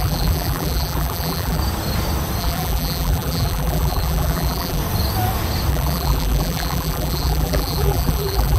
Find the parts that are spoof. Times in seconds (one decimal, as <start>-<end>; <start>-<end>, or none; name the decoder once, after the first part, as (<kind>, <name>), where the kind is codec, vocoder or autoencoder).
0.0-1.6 (vocoder, BigVGAN v2); 2.4-4.8; 5.7-8.6